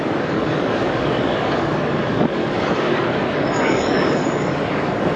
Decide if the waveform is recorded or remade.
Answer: remade